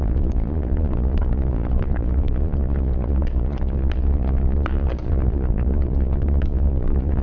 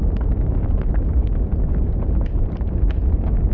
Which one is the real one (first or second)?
second